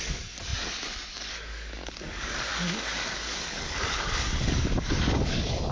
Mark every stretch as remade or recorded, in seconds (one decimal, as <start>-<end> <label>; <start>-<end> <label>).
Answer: 0.0-5.7 remade

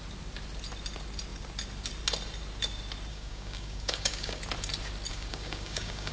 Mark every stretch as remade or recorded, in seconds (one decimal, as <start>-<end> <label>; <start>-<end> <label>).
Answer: 0.0-3.1 recorded; 3.1-4.4 remade; 4.4-5.1 recorded; 5.1-6.1 remade

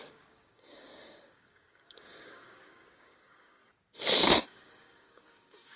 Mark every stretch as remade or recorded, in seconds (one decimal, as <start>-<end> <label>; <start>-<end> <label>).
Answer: 0.0-3.6 remade; 3.6-4.2 recorded; 4.2-5.8 remade

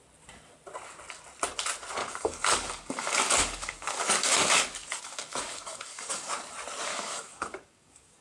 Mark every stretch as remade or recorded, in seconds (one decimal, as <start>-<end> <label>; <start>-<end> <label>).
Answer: 0.0-2.0 recorded; 2.0-6.3 remade; 6.3-6.9 recorded; 6.9-8.2 remade

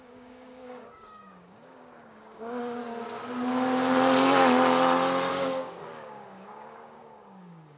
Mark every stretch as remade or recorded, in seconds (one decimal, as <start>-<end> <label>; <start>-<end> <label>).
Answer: 0.0-2.8 remade; 2.8-5.3 recorded; 5.3-7.8 remade

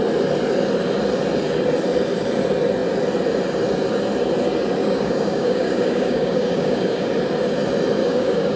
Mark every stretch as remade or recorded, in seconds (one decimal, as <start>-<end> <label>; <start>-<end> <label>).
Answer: 0.0-4.8 recorded; 4.8-7.1 remade; 7.1-8.0 recorded; 8.0-8.6 remade